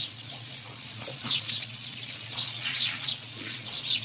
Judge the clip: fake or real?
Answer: fake